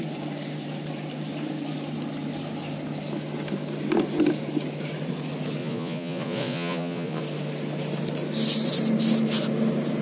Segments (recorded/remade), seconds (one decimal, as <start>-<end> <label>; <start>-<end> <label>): 0.0-5.6 recorded; 5.6-7.2 remade; 7.2-10.0 recorded